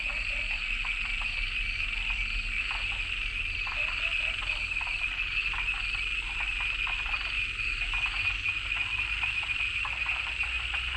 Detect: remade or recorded recorded